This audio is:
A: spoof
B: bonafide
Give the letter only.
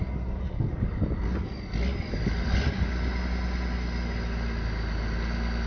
B